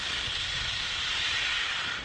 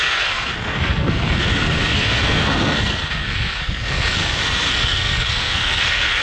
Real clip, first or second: first